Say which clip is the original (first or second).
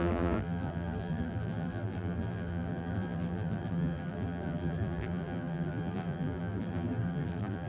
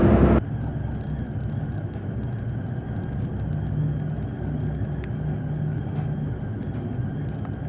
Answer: second